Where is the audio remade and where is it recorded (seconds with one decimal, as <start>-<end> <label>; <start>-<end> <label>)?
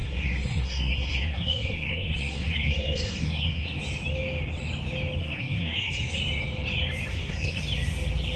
0.0-3.8 remade; 3.8-5.2 recorded; 5.2-6.2 remade; 6.2-7.1 recorded; 7.1-7.6 remade; 7.6-8.4 recorded